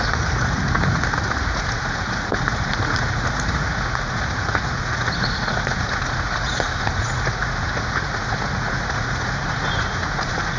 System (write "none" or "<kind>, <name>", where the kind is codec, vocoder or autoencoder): vocoder, Vocos